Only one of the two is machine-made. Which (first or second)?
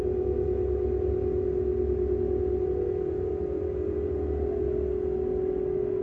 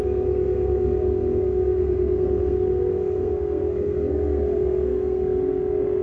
second